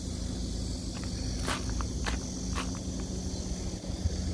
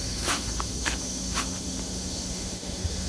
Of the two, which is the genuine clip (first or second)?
first